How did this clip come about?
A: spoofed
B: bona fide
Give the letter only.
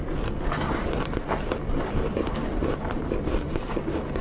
B